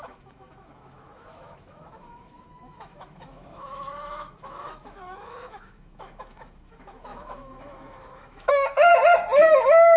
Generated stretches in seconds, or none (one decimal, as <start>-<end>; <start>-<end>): 0.0-8.9